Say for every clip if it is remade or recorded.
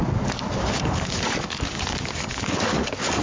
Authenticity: remade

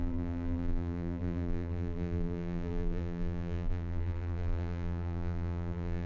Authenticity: remade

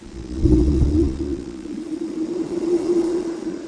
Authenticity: remade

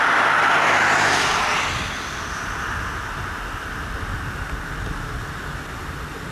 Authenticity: recorded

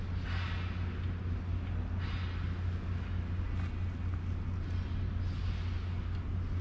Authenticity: recorded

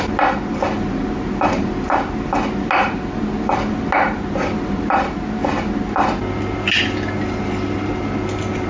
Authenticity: recorded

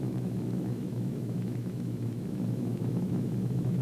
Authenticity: remade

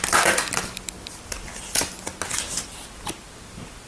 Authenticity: recorded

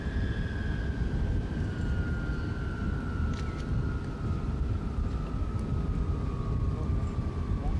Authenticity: recorded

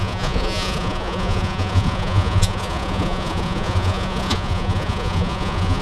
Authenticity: remade